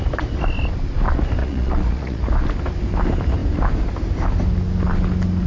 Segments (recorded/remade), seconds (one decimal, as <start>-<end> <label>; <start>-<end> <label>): 0.0-1.4 recorded; 1.4-2.2 remade; 2.2-5.5 recorded